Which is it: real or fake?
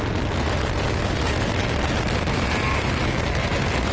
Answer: real